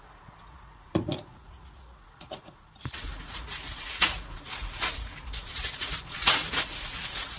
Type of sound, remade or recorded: remade